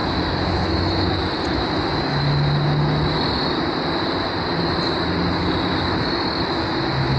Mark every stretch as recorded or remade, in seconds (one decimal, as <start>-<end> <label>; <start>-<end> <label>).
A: 0.0-7.2 recorded